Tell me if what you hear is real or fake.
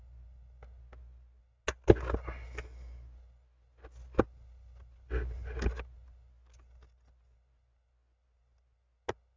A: real